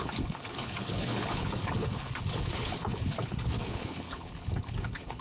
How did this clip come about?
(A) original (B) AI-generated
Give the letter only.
B